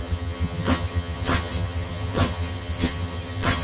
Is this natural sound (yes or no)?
no